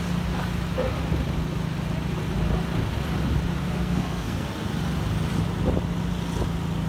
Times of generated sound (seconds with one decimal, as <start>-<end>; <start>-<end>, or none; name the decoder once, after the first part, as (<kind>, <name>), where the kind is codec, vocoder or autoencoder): 3.6-4.7 (codec, SNAC)